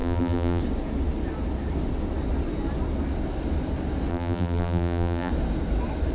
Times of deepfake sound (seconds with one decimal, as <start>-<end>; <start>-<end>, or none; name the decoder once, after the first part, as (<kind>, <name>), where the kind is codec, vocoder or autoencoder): 0.0-0.6 (vocoder, BigVGAN v2); 4.1-5.3